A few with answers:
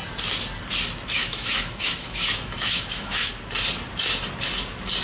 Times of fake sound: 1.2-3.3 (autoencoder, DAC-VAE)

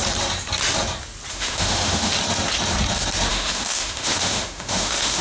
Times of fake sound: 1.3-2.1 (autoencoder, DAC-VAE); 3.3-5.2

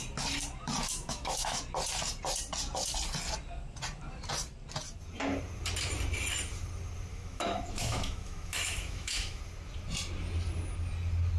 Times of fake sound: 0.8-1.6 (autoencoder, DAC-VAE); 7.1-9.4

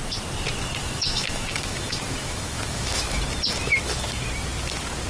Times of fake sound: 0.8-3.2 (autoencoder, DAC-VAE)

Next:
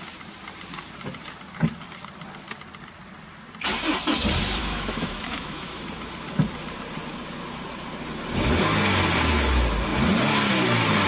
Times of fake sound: 4.6-5.8 (autoencoder, DAC-VAE)

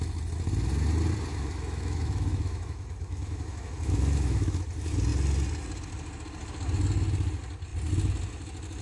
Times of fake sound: 1.3-4.6 (autoencoder, DAC-VAE)